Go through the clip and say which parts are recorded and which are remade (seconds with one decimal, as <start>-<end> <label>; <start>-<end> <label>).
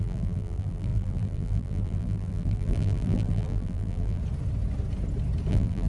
0.0-4.2 remade; 4.2-5.5 recorded; 5.5-5.9 remade